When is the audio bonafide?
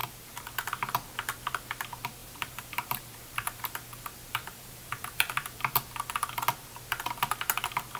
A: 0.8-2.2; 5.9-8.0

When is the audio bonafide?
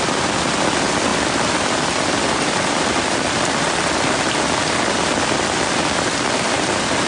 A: 0.0-7.1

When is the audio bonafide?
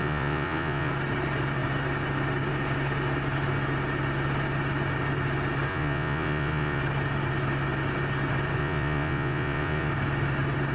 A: 0.9-5.7; 6.8-8.6; 9.9-10.7